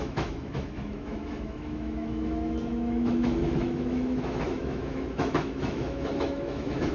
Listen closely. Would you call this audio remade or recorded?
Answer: remade